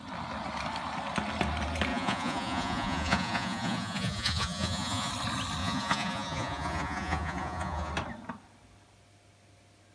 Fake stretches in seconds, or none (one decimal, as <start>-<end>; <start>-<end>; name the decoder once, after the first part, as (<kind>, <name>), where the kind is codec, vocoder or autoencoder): 1.9-5.1 (vocoder, Vocos); 5.6-7.9